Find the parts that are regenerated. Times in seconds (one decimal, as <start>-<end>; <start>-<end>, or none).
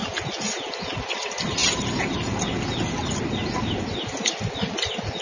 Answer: none